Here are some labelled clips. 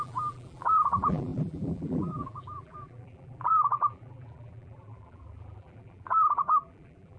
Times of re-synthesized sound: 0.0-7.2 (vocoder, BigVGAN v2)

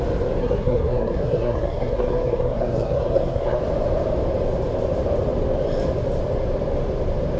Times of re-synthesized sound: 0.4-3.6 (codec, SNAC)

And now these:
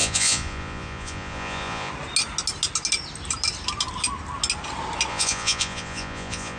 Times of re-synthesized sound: 0.0-1.9 (vocoder, Vocos); 5.1-6.6

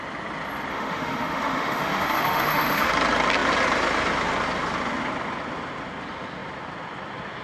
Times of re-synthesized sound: 0.7-2.9 (autoencoder, DAC-VAE)

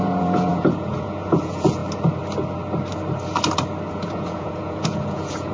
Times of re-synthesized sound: 0.0-1.8 (vocoder, Vocos); 3.9-5.5